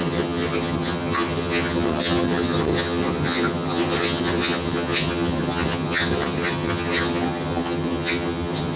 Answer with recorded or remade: remade